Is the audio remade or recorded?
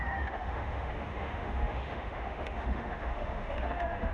remade